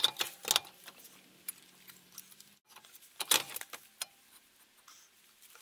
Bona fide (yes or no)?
yes